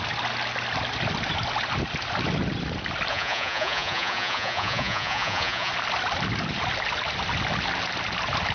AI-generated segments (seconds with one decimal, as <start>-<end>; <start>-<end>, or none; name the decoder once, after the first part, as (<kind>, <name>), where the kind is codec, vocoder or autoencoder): 3.1-5.7 (vocoder, Vocos)